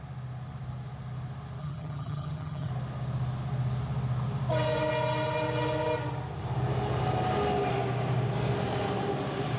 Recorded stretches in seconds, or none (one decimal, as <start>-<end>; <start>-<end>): 0.0-1.6; 2.7-9.6